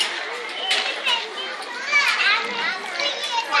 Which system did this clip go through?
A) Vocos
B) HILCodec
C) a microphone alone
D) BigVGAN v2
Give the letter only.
C